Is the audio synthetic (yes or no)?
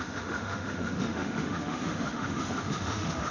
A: yes